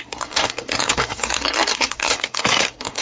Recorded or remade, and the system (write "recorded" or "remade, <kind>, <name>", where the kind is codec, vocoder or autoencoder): remade, codec, SNAC